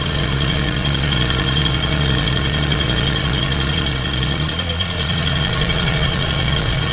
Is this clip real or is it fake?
fake